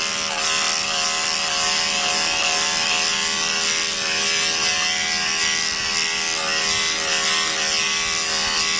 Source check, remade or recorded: recorded